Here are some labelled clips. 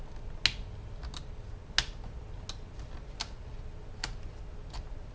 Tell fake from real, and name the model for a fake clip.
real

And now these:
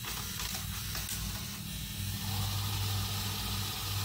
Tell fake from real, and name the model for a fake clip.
real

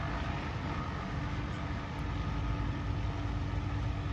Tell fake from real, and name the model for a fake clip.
real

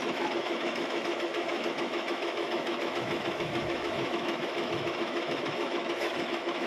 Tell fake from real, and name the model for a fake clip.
fake, autoencoder, DAC-VAE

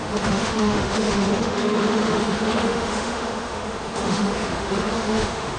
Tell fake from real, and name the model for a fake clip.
fake, autoencoder, DAC-VAE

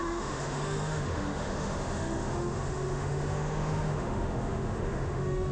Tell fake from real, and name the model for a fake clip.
fake, autoencoder, DAC-VAE